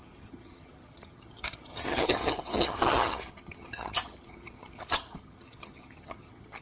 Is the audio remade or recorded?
remade